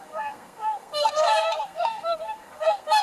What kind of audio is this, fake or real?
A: fake